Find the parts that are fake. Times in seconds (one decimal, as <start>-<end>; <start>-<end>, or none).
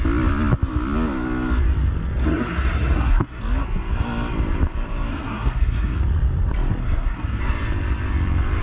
2.2-3.4; 5.1-6.0; 6.8-7.4